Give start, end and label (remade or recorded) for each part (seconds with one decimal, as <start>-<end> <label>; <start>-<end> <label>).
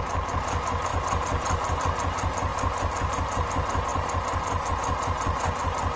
0.0-6.0 recorded